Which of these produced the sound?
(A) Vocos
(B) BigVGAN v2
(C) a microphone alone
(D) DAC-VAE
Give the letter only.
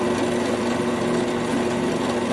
C